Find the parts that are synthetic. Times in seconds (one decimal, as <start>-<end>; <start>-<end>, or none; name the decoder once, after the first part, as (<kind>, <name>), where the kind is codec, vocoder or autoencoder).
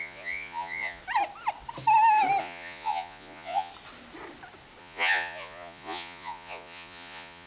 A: 0.0-1.0 (vocoder, Vocos); 2.4-3.7; 4.8-7.5